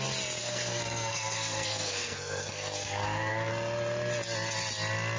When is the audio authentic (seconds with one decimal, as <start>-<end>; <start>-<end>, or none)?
0.0-0.4; 3.5-5.2